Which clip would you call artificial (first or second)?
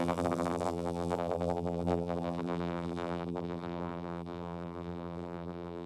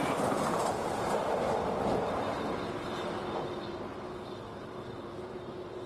first